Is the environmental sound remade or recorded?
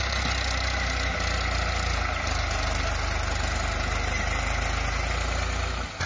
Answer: recorded